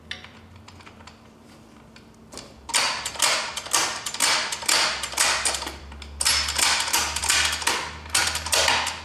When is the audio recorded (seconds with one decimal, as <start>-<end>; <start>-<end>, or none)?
0.0-9.0